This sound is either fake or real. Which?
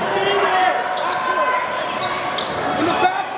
real